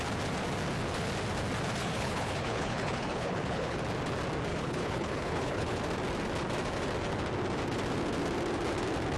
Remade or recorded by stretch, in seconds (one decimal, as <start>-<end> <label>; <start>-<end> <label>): 0.0-1.8 recorded; 1.8-3.8 remade; 3.8-4.5 recorded; 4.5-5.8 remade; 5.8-9.2 recorded